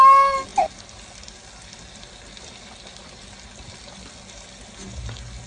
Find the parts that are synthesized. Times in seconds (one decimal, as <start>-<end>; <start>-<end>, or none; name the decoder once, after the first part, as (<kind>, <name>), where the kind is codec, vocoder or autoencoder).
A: none